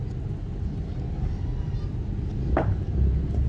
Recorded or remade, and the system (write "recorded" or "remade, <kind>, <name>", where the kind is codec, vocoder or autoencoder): recorded